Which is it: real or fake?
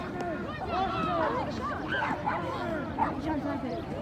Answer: real